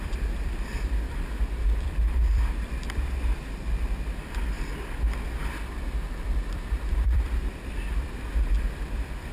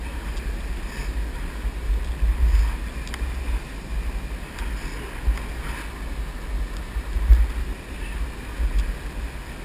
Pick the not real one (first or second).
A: first